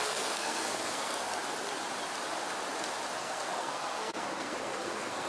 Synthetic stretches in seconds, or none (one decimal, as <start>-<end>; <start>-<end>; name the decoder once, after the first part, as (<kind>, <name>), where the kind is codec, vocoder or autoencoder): 0.0-1.4 (codec, SNAC); 3.2-5.3